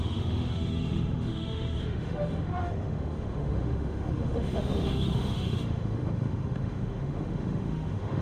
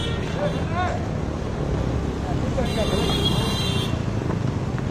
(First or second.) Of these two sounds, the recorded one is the second